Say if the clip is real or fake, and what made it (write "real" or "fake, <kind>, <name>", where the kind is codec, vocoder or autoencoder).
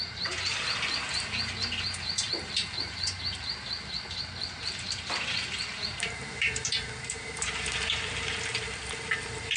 fake, vocoder, BigVGAN v2